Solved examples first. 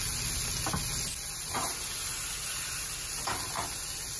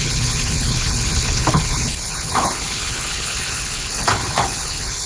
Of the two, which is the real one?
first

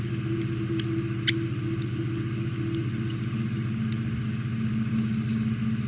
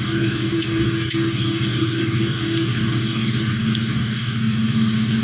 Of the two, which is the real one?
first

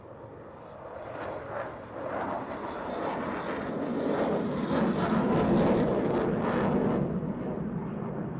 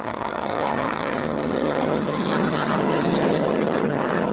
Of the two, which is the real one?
first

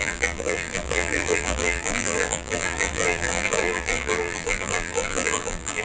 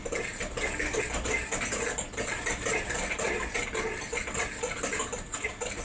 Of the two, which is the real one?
second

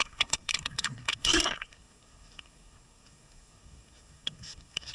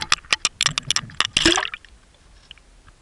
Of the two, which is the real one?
second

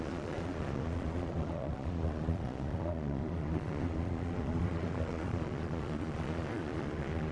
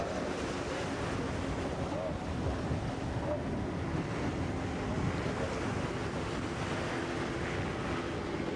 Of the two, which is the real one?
second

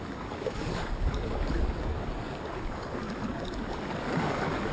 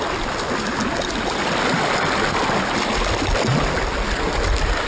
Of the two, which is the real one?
second